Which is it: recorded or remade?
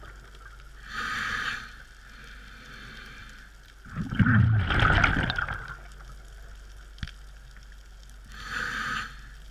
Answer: recorded